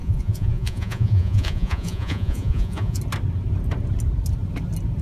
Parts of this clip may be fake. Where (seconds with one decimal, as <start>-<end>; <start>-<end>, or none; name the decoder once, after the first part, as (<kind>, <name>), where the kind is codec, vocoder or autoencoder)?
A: 0.0-3.0 (vocoder, Vocos)